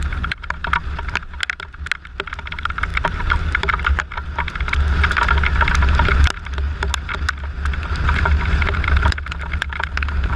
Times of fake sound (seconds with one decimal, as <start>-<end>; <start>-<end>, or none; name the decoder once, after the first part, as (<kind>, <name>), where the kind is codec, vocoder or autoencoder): 2.9-3.7 (vocoder, BigVGAN v2)